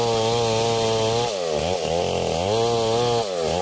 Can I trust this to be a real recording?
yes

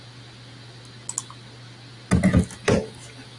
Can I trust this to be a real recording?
yes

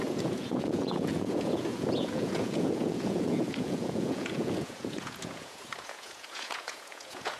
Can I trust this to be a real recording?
no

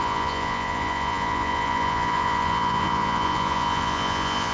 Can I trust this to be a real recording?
no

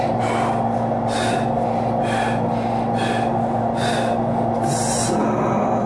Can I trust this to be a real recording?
yes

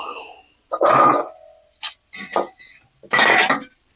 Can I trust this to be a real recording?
yes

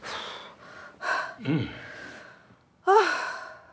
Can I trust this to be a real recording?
yes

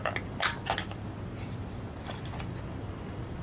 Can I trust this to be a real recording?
yes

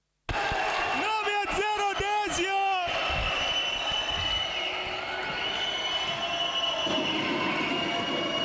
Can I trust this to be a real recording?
yes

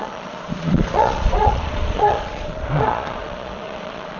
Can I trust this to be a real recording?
no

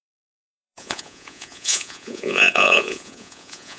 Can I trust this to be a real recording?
no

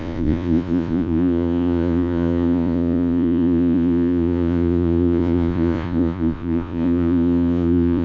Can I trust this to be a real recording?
no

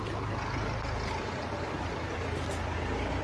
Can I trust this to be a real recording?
yes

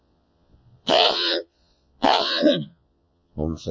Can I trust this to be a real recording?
no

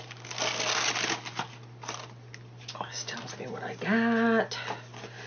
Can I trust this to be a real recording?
yes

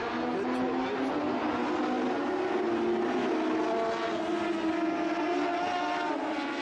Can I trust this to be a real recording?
yes